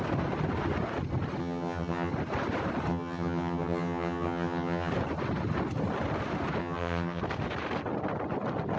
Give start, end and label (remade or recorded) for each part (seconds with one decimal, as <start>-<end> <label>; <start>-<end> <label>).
0.0-1.4 recorded; 1.4-2.1 remade; 2.1-2.9 recorded; 2.9-4.9 remade; 4.9-6.6 recorded; 6.6-7.2 remade; 7.2-8.8 recorded